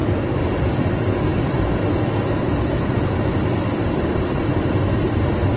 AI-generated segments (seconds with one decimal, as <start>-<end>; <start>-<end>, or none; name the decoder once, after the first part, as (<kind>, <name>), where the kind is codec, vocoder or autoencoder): 0.0-0.8 (vocoder, BigVGAN v2)